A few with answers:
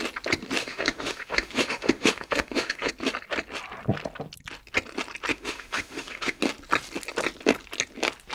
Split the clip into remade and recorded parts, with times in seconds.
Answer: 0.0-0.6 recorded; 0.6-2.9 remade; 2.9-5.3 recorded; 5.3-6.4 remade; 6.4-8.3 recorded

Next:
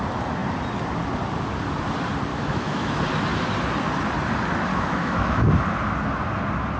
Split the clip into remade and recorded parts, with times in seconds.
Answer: 0.0-2.3 recorded; 2.3-3.0 remade; 3.0-4.7 recorded; 4.7-5.5 remade; 5.5-6.8 recorded

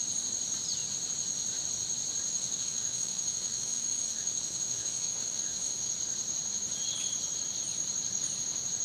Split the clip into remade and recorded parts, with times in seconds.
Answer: 0.0-2.3 recorded; 2.3-5.9 remade; 5.9-8.8 recorded

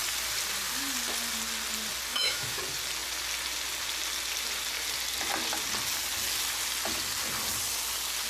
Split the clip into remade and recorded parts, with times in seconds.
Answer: 0.0-2.1 recorded; 2.1-2.6 remade; 2.6-8.3 recorded

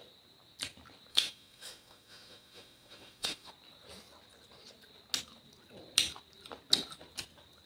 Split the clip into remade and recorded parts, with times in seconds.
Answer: 0.0-1.1 recorded; 1.1-3.5 remade; 3.5-7.7 recorded

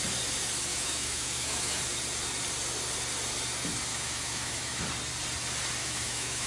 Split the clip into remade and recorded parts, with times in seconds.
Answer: 0.0-0.7 recorded; 0.7-1.8 remade; 1.8-3.9 recorded; 3.9-4.8 remade; 4.8-5.8 recorded; 5.8-6.5 remade

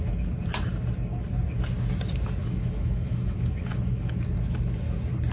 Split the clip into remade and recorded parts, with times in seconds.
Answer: 0.0-2.4 recorded; 2.4-4.1 remade; 4.1-5.3 recorded

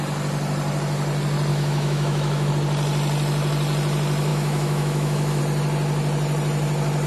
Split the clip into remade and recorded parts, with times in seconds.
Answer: 0.0-1.5 recorded; 1.5-2.5 remade; 2.5-4.3 recorded; 4.3-5.4 remade; 5.4-7.1 recorded